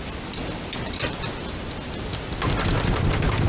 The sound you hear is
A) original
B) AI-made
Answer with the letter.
A